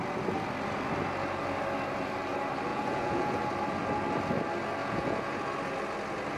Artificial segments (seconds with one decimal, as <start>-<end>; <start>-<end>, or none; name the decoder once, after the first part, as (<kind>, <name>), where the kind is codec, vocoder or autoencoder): 2.7-3.4 (vocoder, Vocos); 4.8-5.4